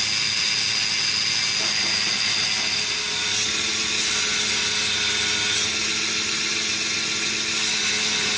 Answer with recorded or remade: recorded